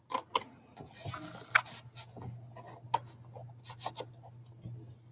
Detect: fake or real real